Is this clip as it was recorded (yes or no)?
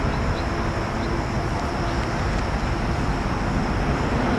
yes